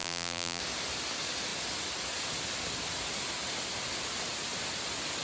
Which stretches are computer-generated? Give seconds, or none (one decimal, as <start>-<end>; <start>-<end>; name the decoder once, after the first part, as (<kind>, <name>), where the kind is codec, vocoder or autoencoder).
0.0-0.6 (vocoder, BigVGAN v2)